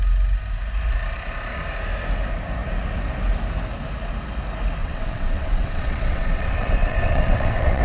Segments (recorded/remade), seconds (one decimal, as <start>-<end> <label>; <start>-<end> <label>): 0.0-4.8 recorded; 4.8-7.8 remade